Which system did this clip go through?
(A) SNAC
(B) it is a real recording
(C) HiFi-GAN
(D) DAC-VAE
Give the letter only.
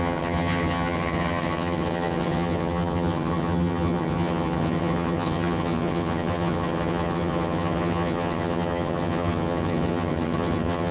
C